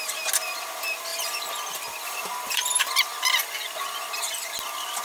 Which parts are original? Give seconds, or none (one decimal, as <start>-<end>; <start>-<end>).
0.0-5.0